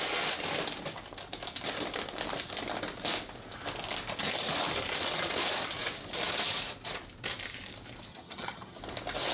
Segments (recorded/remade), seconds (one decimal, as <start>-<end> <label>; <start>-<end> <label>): 0.0-8.1 recorded; 8.1-8.8 remade; 8.8-9.3 recorded